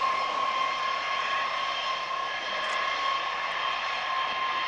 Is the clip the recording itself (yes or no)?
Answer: yes